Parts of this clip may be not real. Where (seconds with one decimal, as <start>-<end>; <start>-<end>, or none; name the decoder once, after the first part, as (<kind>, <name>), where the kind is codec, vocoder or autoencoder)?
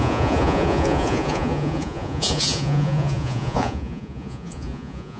0.0-5.2 (vocoder, Vocos)